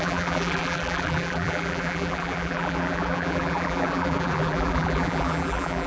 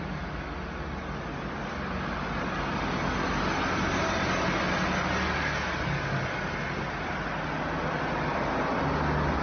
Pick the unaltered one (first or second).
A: second